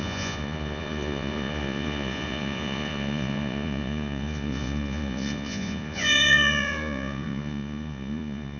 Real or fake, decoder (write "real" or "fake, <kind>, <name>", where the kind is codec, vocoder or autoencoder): fake, vocoder, Vocos